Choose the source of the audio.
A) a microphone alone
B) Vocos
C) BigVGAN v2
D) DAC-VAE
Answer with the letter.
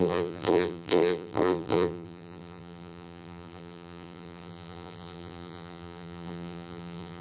C